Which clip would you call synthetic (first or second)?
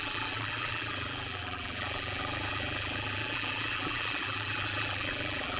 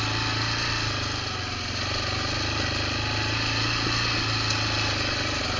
first